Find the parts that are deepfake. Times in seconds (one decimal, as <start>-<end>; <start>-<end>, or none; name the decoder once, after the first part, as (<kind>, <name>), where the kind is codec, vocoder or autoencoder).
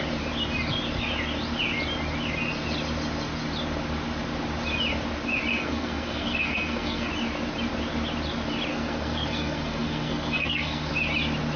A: 5.5-7.1 (codec, SNAC); 8.7-10.9